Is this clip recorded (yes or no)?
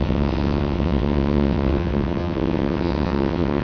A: no